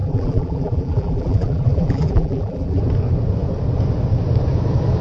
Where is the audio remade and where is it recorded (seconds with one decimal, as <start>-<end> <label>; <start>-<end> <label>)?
0.0-2.8 remade; 2.8-5.0 recorded